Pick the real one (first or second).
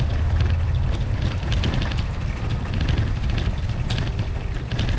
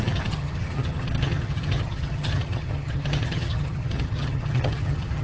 first